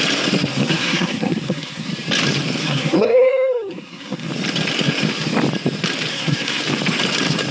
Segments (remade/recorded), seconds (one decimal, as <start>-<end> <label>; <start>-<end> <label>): 0.0-0.5 recorded; 0.5-1.9 remade; 1.9-2.6 recorded; 2.6-4.3 remade; 4.3-6.1 recorded; 6.1-6.6 remade; 6.6-7.5 recorded